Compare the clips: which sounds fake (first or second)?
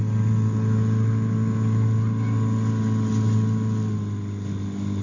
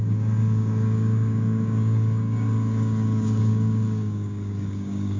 second